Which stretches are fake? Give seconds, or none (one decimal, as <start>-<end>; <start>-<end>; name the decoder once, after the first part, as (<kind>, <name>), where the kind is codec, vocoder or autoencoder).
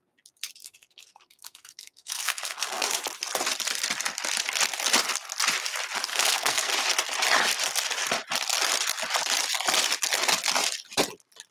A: 0.6-3.0 (codec, SNAC); 6.1-6.7